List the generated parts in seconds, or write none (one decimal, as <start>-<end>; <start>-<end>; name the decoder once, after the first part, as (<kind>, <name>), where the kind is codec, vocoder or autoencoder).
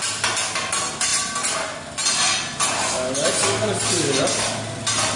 none